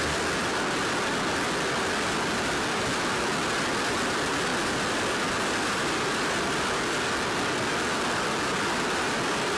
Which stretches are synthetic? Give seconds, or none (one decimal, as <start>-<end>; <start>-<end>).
none